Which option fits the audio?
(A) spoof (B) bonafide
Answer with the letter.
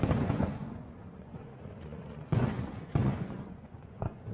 A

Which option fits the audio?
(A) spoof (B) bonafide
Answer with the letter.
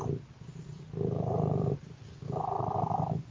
B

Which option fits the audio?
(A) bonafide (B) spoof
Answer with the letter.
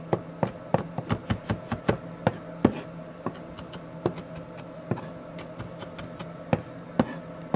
A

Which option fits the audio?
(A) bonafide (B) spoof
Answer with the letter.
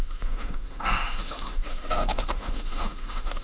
B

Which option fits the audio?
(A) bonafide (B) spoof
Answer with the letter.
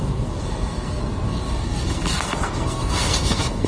B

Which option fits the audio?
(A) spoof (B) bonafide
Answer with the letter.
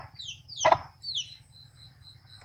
B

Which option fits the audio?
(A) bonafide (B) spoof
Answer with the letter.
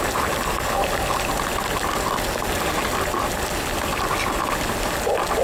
A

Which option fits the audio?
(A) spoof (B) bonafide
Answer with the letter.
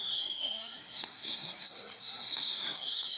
A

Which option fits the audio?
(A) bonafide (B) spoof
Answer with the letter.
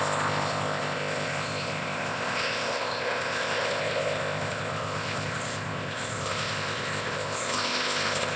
B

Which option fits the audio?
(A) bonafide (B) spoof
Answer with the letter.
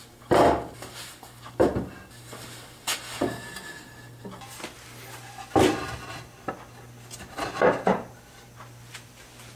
A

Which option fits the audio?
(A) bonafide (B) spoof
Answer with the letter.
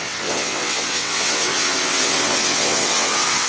B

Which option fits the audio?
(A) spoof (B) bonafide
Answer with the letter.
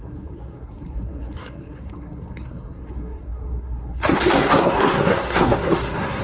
A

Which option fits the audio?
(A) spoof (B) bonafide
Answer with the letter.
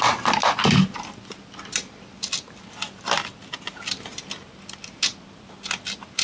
B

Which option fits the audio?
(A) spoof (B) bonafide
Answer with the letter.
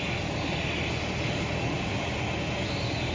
B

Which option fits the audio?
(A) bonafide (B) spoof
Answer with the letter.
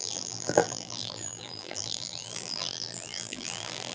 B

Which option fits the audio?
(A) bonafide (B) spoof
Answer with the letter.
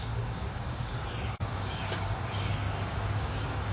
B